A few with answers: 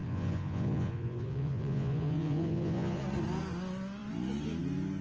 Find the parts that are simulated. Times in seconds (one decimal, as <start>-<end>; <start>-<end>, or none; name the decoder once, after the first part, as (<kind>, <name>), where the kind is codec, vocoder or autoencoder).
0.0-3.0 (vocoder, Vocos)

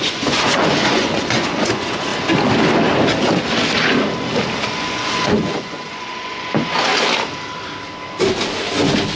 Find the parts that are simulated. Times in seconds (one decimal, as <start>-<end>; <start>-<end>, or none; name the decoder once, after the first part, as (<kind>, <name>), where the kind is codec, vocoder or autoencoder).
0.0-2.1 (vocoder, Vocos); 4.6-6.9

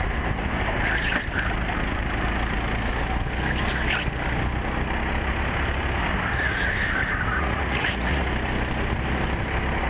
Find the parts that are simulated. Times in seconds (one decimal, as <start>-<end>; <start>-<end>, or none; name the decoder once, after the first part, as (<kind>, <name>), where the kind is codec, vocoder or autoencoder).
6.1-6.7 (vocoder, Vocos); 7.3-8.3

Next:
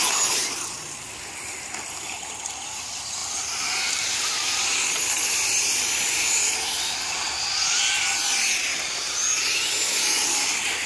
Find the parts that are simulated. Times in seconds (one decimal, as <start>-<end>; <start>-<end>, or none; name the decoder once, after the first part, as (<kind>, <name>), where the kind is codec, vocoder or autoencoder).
none

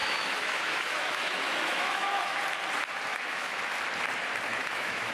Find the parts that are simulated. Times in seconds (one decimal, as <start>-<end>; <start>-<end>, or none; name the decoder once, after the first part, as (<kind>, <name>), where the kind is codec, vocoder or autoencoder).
0.0-2.4 (autoencoder, DAC-VAE); 3.1-3.6; 4.5-5.1